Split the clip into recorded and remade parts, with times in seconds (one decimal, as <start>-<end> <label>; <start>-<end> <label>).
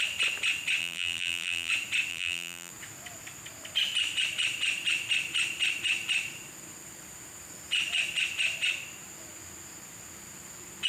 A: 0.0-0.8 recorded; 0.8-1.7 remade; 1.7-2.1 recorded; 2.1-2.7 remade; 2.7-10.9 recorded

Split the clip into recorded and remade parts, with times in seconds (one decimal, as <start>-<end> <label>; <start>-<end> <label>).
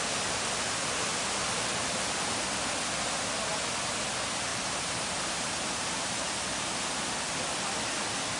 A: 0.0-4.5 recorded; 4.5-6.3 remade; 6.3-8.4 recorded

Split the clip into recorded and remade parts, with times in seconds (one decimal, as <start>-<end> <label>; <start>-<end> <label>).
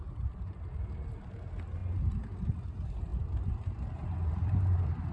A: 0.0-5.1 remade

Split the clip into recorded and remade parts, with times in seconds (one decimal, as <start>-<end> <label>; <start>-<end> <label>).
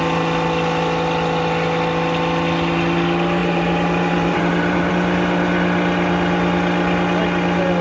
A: 0.0-3.4 recorded; 3.4-4.9 remade; 4.9-7.8 recorded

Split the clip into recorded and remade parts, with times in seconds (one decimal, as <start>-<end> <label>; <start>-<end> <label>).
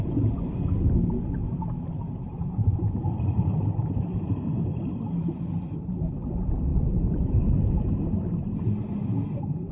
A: 0.0-2.0 recorded; 2.0-4.9 remade; 4.9-6.7 recorded; 6.7-7.6 remade; 7.6-9.7 recorded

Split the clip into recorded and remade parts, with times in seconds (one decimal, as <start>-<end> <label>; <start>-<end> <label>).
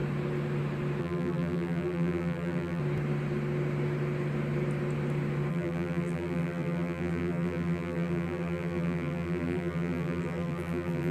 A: 0.0-1.0 recorded; 1.0-2.8 remade; 2.8-5.5 recorded; 5.5-11.1 remade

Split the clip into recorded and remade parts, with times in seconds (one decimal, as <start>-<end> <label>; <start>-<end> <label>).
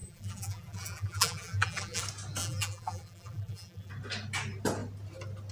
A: 0.0-2.0 remade; 2.0-2.4 recorded; 2.4-3.9 remade; 3.9-5.5 recorded